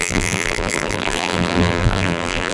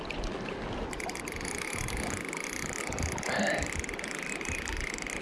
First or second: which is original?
second